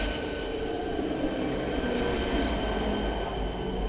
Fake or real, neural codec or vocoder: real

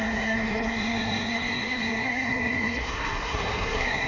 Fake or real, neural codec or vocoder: fake, codec, SNAC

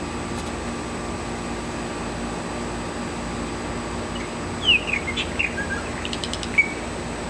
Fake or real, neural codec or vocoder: real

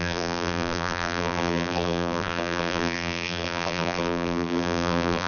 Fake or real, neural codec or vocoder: fake, vocoder, BigVGAN v2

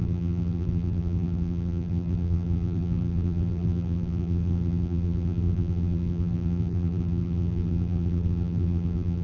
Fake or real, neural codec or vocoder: fake, vocoder, BigVGAN v2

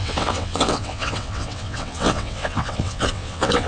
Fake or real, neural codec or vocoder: fake, vocoder, WaveNeXt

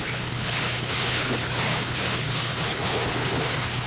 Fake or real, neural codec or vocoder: fake, codec, HILCodec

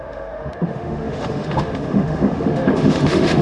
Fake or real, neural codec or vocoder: fake, autoencoder, DAC-VAE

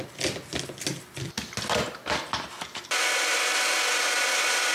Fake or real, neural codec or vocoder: real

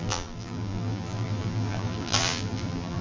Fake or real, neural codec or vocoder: fake, vocoder, BigVGAN v2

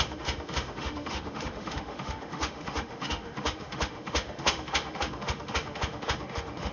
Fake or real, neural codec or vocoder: fake, autoencoder, DAC-VAE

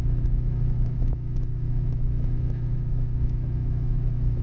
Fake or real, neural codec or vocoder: fake, autoencoder, DAC-VAE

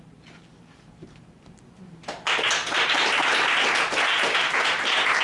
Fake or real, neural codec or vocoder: fake, vocoder, BigVGAN v2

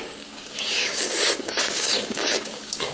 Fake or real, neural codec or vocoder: fake, codec, DAC